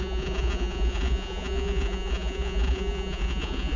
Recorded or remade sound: remade